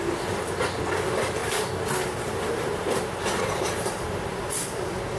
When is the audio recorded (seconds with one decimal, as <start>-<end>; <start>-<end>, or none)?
0.0-1.4; 4.5-5.2